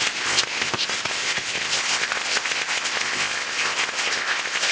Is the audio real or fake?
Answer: fake